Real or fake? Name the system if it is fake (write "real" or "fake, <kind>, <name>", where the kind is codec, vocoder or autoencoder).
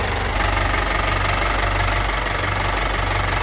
real